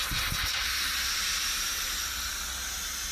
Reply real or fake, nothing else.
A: real